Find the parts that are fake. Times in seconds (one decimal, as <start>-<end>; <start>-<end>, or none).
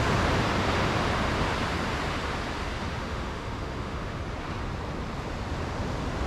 2.9-4.2